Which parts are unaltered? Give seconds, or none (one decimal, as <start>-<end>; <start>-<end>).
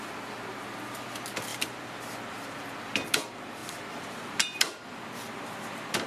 0.0-1.5; 2.6-3.6